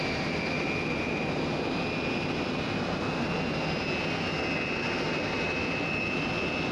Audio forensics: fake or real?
real